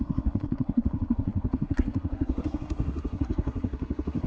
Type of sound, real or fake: fake